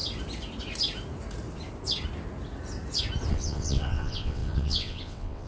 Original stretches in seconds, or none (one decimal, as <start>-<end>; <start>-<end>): 0.0-3.3